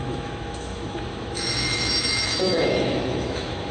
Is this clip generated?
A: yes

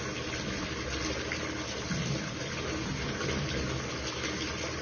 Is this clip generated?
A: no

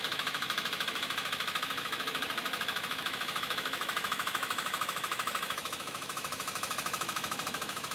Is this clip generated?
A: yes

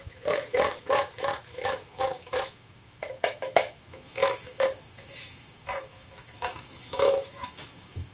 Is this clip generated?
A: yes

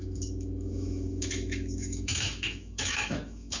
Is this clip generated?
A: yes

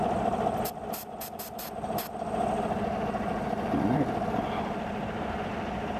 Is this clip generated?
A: no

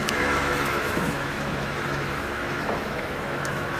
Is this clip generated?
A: yes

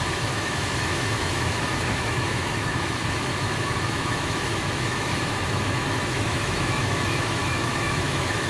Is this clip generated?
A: yes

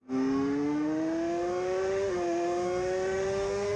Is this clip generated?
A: yes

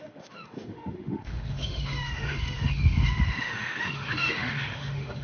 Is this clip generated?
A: yes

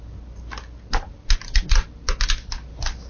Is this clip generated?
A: no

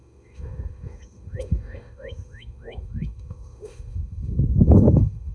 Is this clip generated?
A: yes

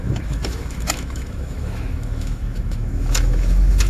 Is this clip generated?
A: yes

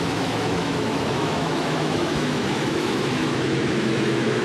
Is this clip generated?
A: yes